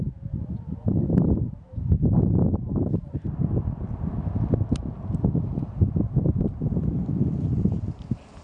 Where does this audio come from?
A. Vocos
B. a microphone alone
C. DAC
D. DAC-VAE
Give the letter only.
B